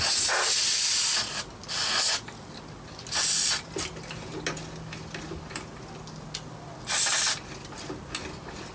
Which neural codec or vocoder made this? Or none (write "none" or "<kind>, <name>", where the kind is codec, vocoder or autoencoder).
none